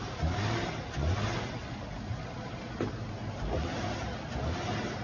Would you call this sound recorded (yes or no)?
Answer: yes